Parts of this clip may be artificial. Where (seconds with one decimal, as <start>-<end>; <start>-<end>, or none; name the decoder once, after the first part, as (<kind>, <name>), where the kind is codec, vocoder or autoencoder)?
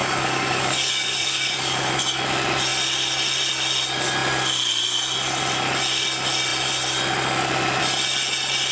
0.0-1.9 (codec, DAC)